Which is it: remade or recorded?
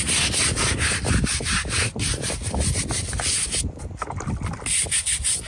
recorded